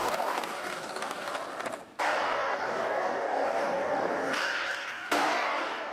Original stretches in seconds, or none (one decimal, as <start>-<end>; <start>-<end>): 1.3-2.0